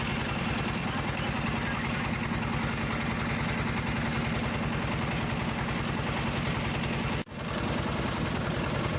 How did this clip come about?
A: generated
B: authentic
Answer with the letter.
B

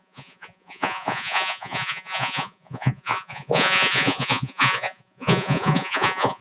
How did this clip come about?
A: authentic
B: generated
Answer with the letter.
B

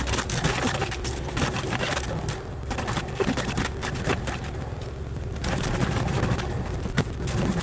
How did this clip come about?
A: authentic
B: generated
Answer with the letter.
A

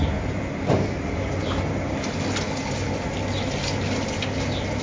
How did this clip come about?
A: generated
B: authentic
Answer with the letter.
B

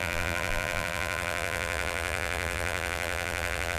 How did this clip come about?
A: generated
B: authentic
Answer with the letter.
A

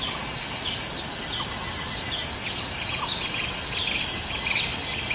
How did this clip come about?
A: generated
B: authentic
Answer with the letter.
B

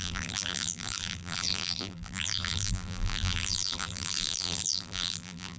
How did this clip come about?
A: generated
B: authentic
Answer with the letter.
A